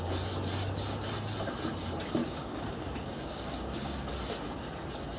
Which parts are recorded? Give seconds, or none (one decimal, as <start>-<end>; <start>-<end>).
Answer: 0.0-2.2; 4.1-5.2

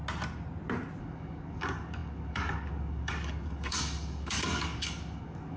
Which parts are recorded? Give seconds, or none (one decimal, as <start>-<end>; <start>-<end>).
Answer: 0.0-1.0

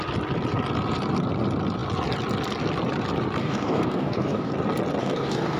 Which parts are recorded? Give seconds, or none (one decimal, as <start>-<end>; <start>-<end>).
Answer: 0.0-3.4; 4.5-5.0

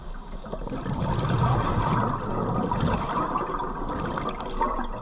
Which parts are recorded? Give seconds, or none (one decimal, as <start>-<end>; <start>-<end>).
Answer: 0.5-5.0

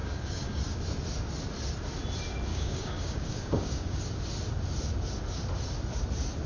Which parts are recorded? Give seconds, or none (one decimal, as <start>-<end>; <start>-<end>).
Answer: 0.8-2.5; 4.0-6.5